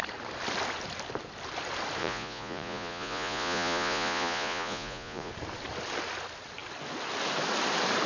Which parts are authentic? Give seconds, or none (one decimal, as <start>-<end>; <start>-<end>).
0.0-2.0; 5.3-8.1